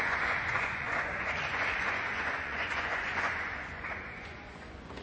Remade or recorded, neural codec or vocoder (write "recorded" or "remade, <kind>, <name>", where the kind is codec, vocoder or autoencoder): remade, vocoder, Vocos